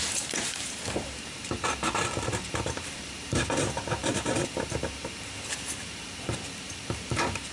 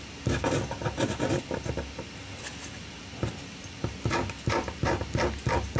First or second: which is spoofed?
first